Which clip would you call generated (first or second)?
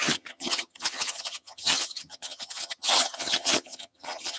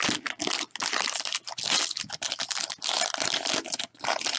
first